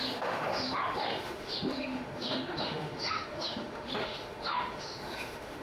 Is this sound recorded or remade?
remade